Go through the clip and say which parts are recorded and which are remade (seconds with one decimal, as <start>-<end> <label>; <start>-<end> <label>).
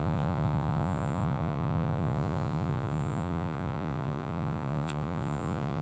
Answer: 0.0-5.8 remade